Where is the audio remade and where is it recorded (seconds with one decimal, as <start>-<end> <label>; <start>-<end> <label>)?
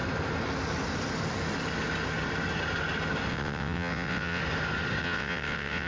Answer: 0.0-3.3 recorded; 3.3-4.4 remade; 4.4-5.0 recorded; 5.0-5.9 remade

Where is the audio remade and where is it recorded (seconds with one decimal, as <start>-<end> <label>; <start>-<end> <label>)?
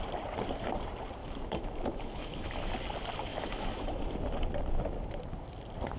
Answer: 0.0-1.2 recorded; 1.2-2.7 remade; 2.7-3.3 recorded; 3.3-4.0 remade; 4.0-6.0 recorded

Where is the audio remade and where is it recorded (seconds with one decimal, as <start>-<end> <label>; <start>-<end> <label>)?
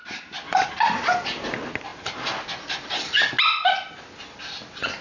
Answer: 0.0-5.0 recorded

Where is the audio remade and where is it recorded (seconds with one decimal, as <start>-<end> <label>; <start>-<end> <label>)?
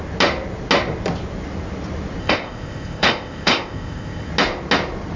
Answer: 0.0-2.2 recorded; 2.2-4.3 remade; 4.3-5.2 recorded